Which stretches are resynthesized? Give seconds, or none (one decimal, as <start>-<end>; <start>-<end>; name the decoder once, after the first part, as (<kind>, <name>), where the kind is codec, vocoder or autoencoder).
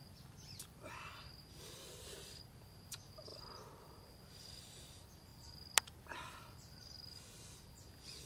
0.0-0.9 (vocoder, BigVGAN v2); 3.3-4.1; 5.3-7.7